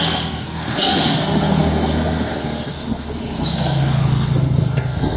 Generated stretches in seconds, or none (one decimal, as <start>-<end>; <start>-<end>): 0.0-5.2